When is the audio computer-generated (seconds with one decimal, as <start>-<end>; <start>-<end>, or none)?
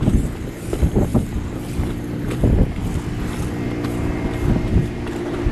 0.0-4.8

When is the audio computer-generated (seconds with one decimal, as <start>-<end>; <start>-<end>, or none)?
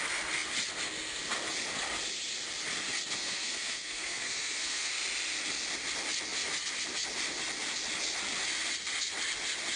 3.2-4.9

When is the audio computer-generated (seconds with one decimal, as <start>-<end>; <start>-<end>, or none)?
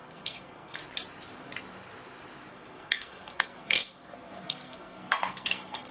0.0-0.8; 2.5-5.9